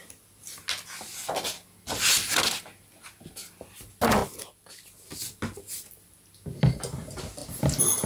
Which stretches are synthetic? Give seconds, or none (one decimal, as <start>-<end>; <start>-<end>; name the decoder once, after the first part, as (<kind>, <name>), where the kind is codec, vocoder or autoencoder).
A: none